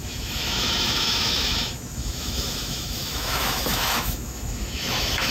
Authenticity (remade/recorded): remade